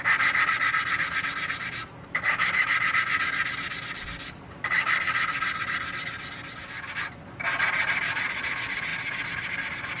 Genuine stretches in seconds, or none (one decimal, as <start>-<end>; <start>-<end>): 0.0-10.0

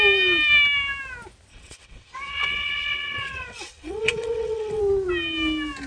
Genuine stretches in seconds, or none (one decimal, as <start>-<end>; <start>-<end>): 0.0-1.5; 4.8-5.9

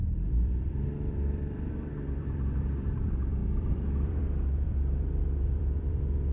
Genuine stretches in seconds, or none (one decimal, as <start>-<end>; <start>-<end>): none

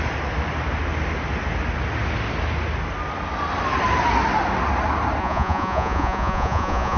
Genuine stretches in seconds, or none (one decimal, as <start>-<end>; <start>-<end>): 0.0-5.2

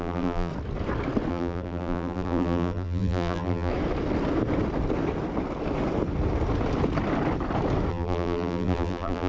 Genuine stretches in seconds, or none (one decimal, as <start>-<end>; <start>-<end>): 0.5-1.3; 3.7-7.9

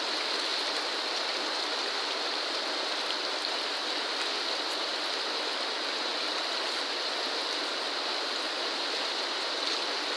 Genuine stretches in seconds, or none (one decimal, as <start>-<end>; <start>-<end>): 0.0-10.2

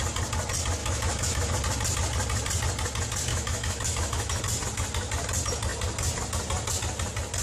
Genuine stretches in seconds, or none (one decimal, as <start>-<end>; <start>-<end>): 0.0-0.8; 1.5-3.3; 4.4-7.4